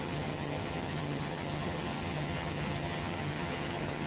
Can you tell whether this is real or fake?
fake